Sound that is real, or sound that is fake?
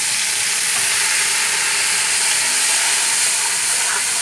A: real